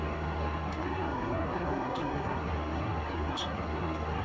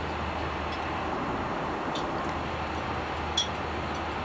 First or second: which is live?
second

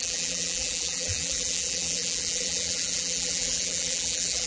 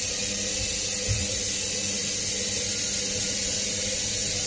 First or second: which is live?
second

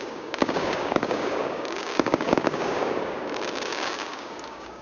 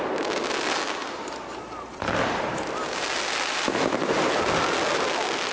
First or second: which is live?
second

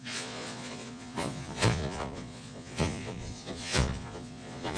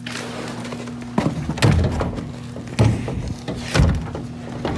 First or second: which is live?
second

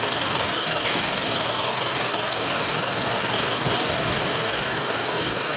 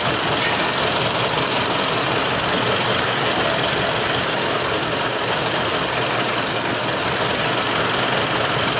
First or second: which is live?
second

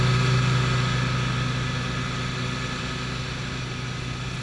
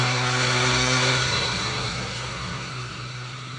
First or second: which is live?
first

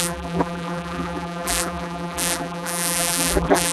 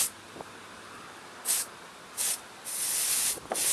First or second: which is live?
second